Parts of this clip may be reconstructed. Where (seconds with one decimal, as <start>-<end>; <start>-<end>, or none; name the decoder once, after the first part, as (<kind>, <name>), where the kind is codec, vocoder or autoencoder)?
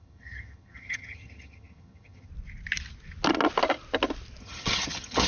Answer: 0.0-2.3 (vocoder, HiFi-GAN); 4.4-5.3